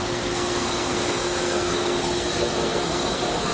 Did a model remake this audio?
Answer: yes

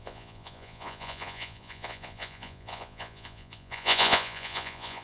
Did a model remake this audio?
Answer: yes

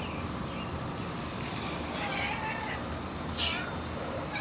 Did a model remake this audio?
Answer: no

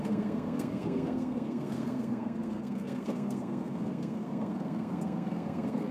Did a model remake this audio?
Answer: yes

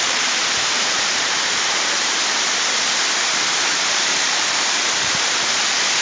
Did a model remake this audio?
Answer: yes